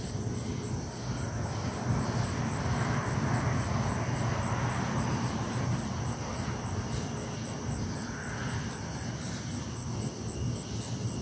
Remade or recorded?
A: recorded